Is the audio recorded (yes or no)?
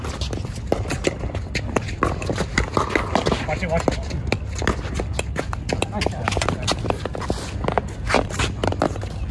yes